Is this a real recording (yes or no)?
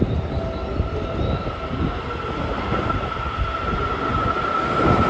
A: yes